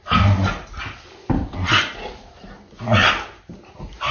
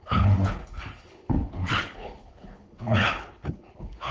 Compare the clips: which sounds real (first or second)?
first